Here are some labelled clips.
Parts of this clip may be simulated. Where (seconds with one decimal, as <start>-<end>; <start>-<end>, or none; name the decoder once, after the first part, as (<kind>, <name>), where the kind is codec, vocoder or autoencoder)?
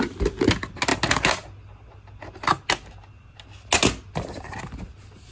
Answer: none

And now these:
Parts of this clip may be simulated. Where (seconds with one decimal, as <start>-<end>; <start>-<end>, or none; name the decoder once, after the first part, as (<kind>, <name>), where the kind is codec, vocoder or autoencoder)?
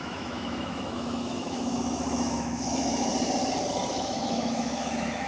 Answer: 0.0-3.1 (autoencoder, DAC-VAE); 3.9-5.3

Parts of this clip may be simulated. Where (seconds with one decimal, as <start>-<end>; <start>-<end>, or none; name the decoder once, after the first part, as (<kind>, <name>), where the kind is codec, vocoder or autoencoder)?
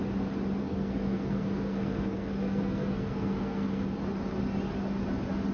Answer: 0.6-3.9 (codec, SNAC)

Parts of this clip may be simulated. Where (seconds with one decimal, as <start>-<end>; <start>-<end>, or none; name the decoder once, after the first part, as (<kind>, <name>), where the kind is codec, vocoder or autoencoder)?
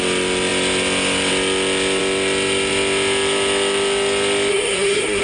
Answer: 4.5-5.2 (codec, SNAC)